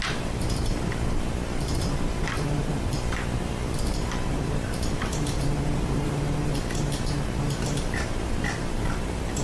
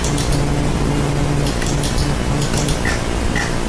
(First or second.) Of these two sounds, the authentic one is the second